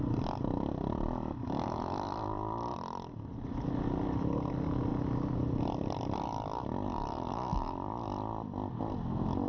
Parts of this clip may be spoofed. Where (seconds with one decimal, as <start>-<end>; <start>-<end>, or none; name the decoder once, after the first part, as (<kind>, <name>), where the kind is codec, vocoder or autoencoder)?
2.7-3.8 (vocoder, BigVGAN v2)